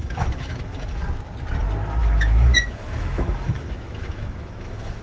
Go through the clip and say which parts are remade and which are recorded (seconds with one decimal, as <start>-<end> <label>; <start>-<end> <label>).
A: 0.0-1.0 remade; 1.0-2.0 recorded; 2.0-5.0 remade